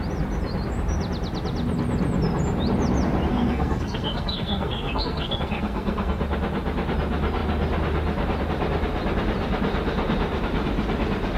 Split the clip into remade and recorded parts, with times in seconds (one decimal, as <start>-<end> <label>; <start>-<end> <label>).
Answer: 0.0-3.3 recorded; 3.3-6.2 remade; 6.2-11.4 recorded